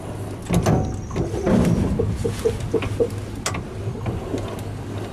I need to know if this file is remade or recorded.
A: recorded